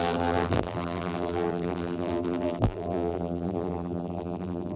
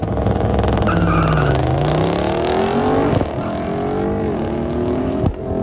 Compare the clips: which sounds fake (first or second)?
first